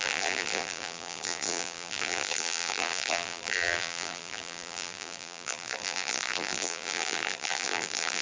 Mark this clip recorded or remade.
remade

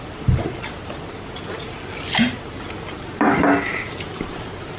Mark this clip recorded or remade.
recorded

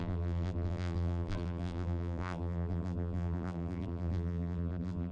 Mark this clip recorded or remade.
remade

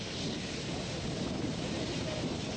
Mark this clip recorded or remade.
remade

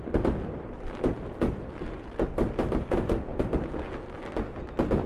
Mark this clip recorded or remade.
recorded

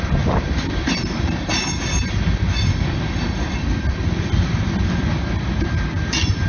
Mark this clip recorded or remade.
remade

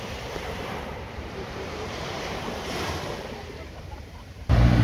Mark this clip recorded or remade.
remade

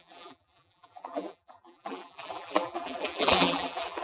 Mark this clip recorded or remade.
remade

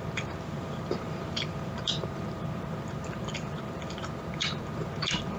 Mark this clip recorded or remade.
remade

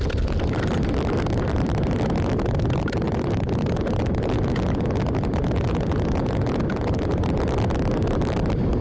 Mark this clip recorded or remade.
remade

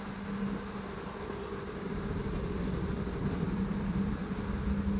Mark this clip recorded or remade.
recorded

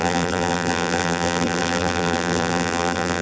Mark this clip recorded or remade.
remade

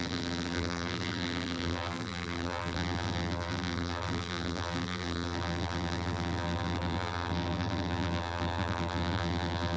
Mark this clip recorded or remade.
remade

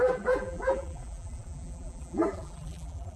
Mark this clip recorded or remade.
remade